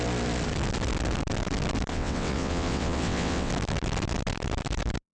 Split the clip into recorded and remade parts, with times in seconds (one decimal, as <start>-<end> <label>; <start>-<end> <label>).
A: 0.0-1.9 recorded; 1.9-3.5 remade; 3.5-5.1 recorded